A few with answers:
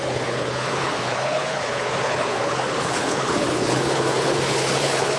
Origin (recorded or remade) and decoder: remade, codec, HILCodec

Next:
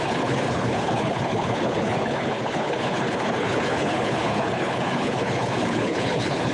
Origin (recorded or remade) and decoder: remade, codec, HILCodec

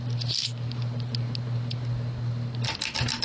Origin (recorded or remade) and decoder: recorded